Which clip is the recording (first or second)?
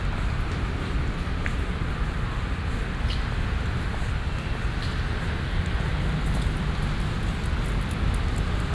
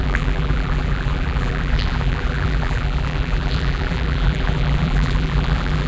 first